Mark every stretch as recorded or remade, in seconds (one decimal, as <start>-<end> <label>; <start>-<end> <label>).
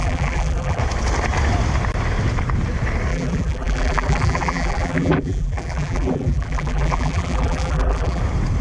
0.0-0.8 remade; 0.8-3.1 recorded; 3.1-8.2 remade; 8.2-8.6 recorded